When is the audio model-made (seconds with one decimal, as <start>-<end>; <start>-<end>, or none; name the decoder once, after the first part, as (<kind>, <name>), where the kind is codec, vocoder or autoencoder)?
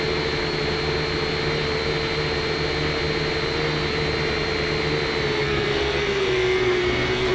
5.4-7.3 (codec, SNAC)